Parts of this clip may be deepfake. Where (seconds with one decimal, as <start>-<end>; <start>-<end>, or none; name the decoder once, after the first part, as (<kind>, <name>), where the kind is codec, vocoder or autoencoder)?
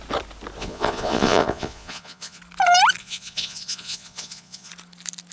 0.6-2.4 (vocoder, Vocos); 3.0-4.7